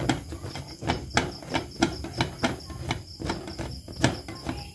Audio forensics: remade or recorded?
recorded